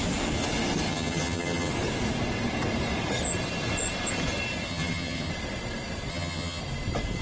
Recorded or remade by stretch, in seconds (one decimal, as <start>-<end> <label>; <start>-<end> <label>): 0.0-0.9 recorded; 0.9-1.7 remade; 1.7-4.7 recorded; 4.7-5.3 remade; 5.3-6.1 recorded; 6.1-6.6 remade; 6.6-7.2 recorded